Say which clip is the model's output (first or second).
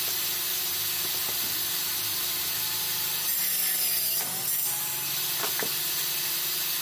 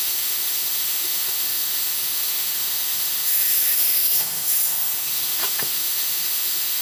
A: second